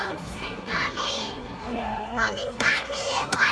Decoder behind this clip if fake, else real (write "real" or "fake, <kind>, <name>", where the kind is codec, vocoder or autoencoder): fake, codec, SNAC